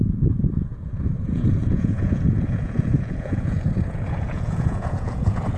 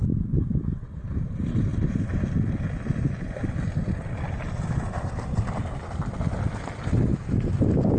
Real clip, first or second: second